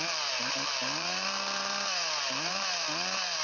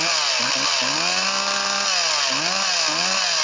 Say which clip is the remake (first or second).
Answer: first